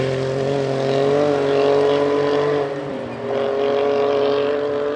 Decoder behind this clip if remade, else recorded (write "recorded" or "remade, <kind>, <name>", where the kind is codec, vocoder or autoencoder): recorded